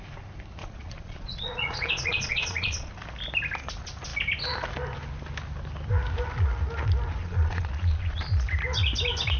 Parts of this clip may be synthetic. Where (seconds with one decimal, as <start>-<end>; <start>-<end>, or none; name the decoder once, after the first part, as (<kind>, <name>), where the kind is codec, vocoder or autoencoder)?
0.6-2.9 (vocoder, Vocos); 7.2-8.2